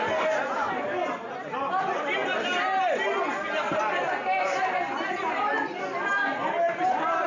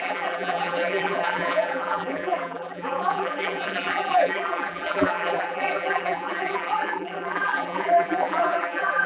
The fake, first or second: second